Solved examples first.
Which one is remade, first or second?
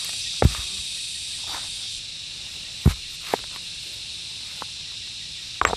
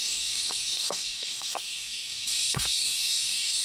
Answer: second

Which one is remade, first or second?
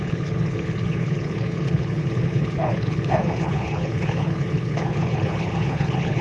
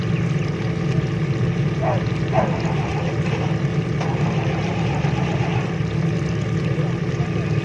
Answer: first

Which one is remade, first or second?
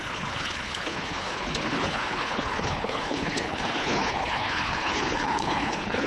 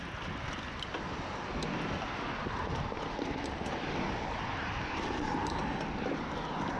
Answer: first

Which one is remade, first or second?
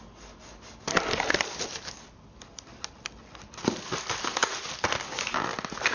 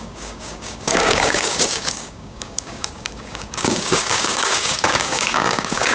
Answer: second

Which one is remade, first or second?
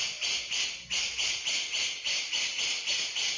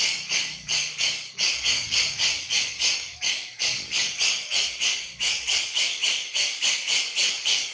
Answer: second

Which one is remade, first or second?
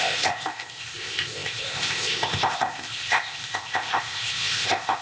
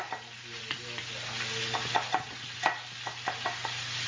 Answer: first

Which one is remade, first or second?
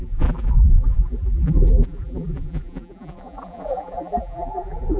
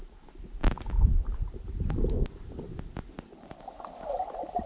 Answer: first